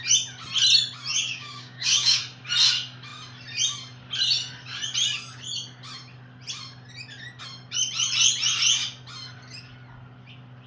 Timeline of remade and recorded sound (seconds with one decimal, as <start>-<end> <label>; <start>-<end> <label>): 0.0-1.1 recorded; 1.1-2.2 remade; 2.2-10.7 recorded